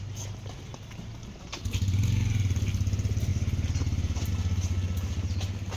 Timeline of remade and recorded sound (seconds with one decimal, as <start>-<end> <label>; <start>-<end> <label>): 0.0-5.8 recorded